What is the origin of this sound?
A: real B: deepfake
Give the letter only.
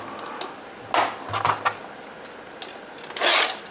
A